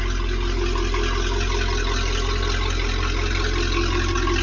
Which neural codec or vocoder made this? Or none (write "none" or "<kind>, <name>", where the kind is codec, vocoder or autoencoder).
none